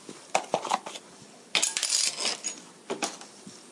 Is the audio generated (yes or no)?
no